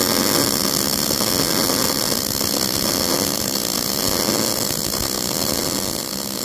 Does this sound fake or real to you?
real